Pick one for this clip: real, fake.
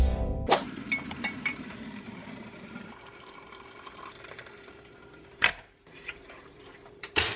fake